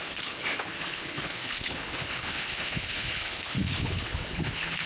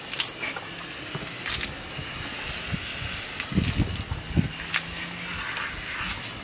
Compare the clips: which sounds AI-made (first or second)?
first